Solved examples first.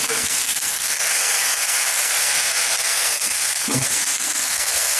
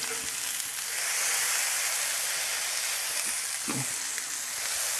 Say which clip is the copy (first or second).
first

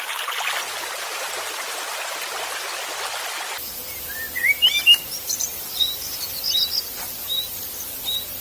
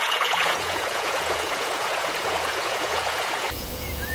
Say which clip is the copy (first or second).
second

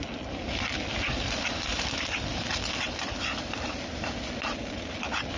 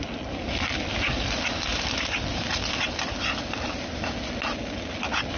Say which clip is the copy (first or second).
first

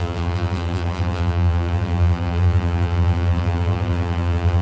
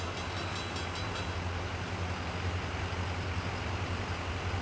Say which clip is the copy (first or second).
first